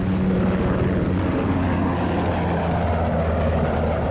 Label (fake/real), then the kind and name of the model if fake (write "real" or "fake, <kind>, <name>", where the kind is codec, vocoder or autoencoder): real